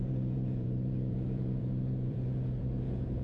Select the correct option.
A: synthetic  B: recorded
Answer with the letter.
A